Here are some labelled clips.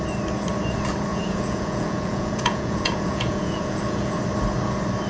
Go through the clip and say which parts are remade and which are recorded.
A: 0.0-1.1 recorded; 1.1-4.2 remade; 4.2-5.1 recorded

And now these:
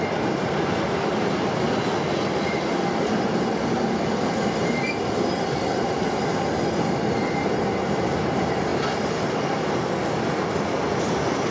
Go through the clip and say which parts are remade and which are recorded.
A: 0.0-11.5 recorded